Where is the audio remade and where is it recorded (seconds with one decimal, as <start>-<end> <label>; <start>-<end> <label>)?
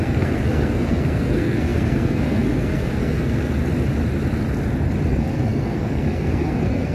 0.0-3.6 remade; 3.6-5.1 recorded; 5.1-6.9 remade